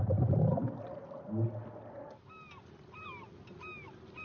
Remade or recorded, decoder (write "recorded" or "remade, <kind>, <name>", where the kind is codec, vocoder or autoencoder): recorded